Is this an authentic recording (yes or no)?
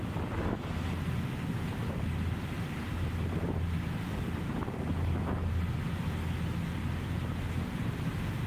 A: yes